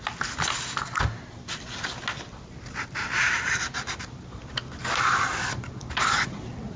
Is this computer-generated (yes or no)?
no